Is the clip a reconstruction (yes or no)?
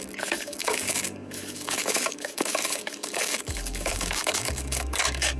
yes